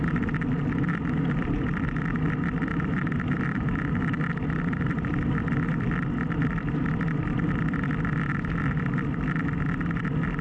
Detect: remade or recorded remade